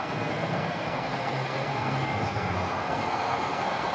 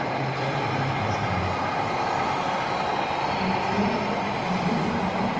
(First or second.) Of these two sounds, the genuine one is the second